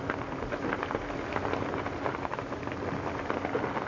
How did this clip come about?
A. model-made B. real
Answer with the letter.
B